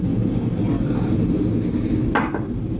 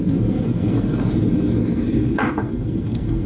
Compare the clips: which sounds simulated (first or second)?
second